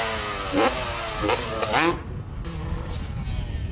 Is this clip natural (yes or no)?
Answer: yes